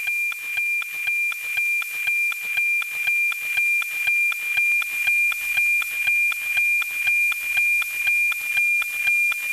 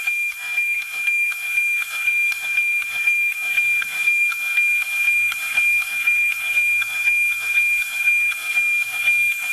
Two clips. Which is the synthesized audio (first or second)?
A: second